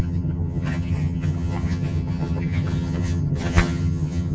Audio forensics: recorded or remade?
remade